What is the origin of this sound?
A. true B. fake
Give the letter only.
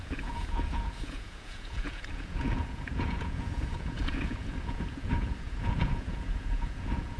B